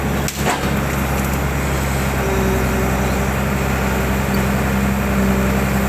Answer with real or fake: real